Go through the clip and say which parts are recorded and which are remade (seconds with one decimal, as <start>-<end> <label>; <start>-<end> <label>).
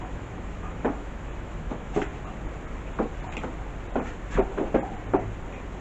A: 0.0-2.1 remade; 2.1-5.8 recorded